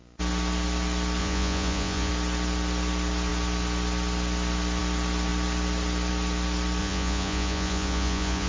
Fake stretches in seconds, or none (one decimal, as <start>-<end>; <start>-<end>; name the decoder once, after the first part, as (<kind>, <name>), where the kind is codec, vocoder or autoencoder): 1.2-2.1 (vocoder, Vocos); 6.8-8.5